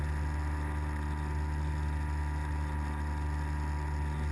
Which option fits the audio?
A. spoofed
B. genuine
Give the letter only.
B